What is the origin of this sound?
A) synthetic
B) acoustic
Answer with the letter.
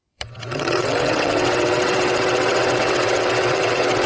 A